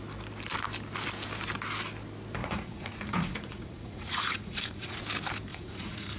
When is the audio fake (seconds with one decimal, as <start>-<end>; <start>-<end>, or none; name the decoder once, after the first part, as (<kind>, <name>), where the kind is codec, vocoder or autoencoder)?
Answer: 2.4-5.0 (vocoder, Vocos); 5.5-6.2